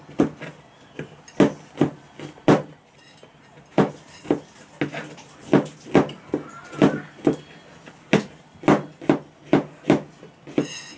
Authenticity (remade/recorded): recorded